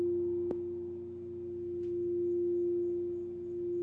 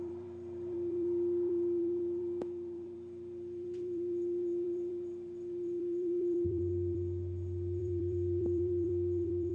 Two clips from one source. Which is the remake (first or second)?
second